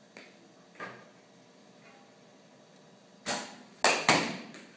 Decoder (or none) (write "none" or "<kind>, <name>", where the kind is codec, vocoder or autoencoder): none